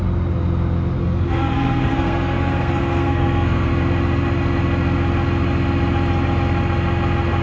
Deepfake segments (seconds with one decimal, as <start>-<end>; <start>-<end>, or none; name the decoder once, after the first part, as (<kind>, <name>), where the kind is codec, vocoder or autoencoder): 1.0-3.7 (codec, SNAC)